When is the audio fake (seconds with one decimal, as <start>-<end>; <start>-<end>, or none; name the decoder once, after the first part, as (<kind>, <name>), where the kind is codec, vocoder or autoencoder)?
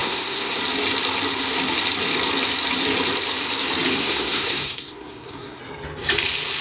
0.0-0.6 (codec, SNAC); 4.0-5.6